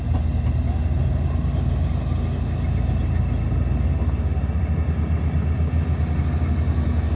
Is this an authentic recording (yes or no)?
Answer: yes